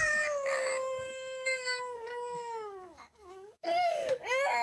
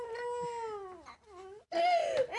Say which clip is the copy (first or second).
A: first